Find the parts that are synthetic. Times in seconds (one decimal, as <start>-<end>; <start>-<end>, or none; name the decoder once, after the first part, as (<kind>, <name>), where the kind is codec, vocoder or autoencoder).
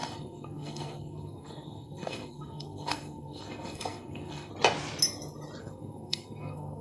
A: 0.0-4.5 (codec, SNAC); 5.6-6.8